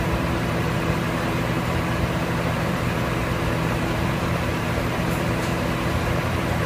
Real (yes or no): no